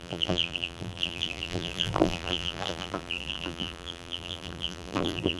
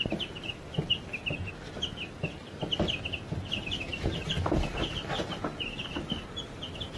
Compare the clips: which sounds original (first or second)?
second